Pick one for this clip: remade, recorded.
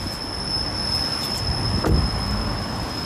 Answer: recorded